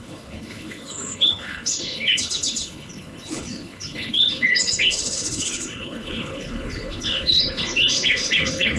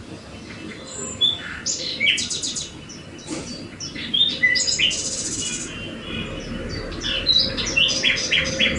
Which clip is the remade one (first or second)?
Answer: first